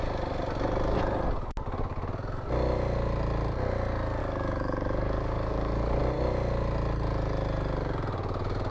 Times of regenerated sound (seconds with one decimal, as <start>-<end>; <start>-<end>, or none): 4.2-6.0